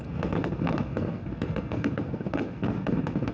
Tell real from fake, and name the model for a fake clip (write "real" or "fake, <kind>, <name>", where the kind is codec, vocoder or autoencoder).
fake, codec, SNAC